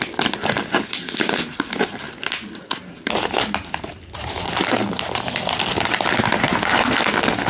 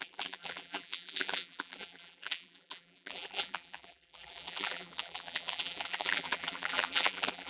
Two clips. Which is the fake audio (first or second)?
second